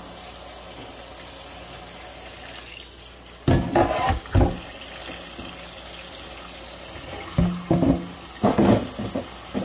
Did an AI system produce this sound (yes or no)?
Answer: no